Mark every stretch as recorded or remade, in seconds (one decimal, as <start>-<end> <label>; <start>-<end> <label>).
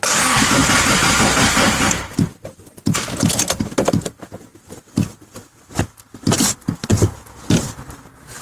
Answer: 0.0-6.9 recorded; 6.9-7.5 remade; 7.5-8.4 recorded